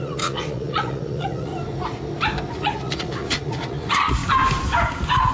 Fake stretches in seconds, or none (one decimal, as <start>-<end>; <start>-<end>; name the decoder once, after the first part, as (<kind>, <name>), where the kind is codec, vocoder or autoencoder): 0.0-1.5 (vocoder, Vocos); 2.5-4.2